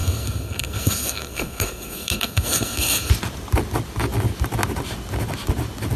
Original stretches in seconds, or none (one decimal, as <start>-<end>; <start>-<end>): 3.1-6.0